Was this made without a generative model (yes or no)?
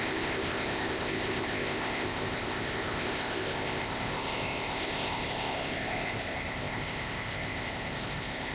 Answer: no